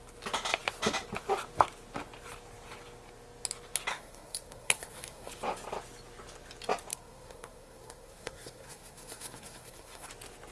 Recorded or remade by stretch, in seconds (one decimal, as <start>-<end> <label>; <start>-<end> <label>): 0.0-3.9 recorded; 3.9-5.3 remade; 5.3-6.9 recorded; 6.9-10.1 remade; 10.1-10.5 recorded